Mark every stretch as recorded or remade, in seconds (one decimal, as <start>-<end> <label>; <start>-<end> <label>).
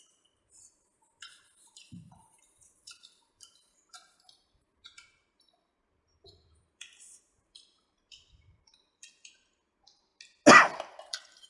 0.0-10.1 remade; 10.1-11.0 recorded; 11.0-11.5 remade